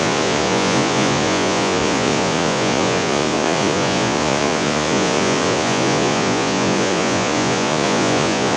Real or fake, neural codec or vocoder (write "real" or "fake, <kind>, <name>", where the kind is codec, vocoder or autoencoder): fake, vocoder, Vocos